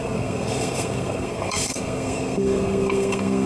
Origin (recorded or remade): remade